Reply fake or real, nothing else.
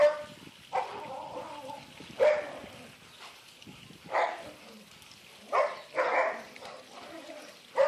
real